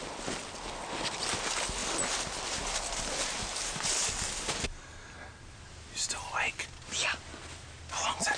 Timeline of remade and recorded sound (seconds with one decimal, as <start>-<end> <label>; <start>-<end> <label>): 0.0-8.4 recorded